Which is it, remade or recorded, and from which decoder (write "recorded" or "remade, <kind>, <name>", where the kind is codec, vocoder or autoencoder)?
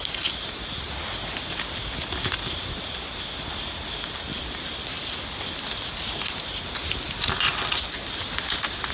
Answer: recorded